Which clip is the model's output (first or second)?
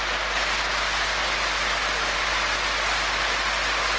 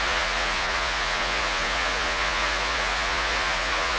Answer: second